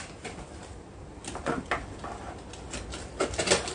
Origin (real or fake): real